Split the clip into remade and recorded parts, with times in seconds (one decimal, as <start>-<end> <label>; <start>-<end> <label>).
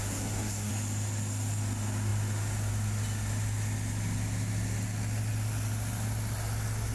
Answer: 0.0-0.7 remade; 0.7-6.9 recorded